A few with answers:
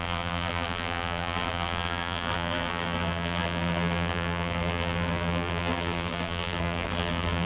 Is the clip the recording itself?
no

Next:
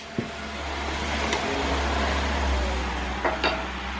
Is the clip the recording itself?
yes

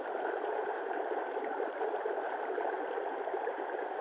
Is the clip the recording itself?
no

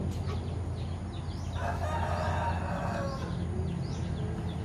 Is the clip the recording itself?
yes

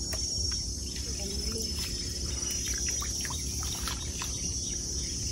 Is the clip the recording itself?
no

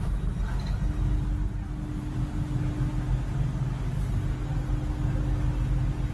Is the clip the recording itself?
yes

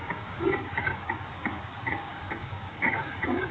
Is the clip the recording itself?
no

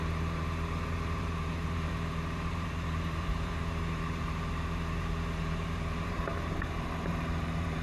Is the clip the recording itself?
no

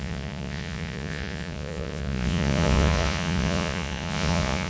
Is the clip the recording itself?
no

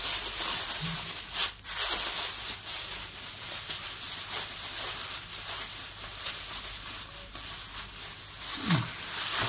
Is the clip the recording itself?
yes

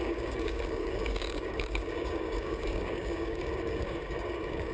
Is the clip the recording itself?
no